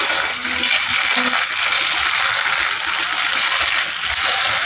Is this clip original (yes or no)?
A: yes